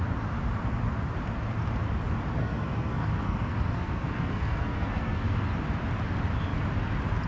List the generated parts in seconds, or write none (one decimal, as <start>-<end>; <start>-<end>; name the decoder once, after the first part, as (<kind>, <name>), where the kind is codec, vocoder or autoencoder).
2.4-5.4 (codec, SNAC)

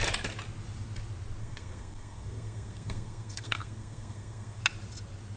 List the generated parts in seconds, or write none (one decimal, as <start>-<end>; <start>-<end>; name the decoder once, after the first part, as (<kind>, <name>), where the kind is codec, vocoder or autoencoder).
1.4-4.6 (codec, SNAC)

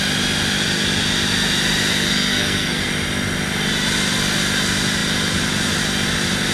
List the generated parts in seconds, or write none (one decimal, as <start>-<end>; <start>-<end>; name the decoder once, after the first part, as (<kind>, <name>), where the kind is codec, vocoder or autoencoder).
1.9-2.9 (codec, SNAC)

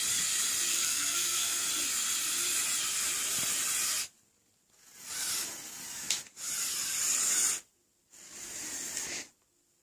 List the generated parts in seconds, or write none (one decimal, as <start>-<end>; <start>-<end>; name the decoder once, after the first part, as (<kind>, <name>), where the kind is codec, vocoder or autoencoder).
0.7-1.6 (codec, SNAC)

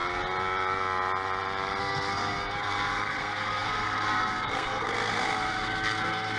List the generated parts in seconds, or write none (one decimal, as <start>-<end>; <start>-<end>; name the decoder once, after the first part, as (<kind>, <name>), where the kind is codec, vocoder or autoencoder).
1.8-6.4 (codec, SNAC)